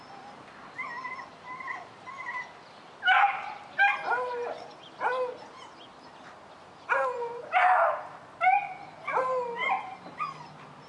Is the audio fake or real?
real